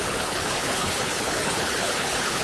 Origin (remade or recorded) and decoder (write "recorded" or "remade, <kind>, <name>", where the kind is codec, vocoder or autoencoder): remade, codec, HILCodec